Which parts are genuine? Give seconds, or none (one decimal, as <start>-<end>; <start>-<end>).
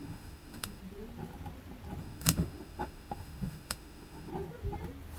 0.8-2.0; 4.3-5.2